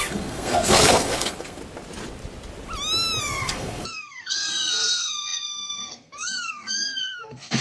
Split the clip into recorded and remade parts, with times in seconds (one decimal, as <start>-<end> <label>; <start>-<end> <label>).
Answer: 0.0-1.6 remade; 1.6-3.2 recorded; 3.2-7.6 remade